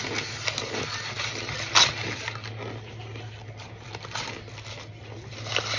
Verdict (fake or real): real